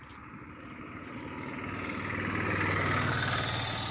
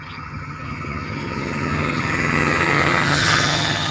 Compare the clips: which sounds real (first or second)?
first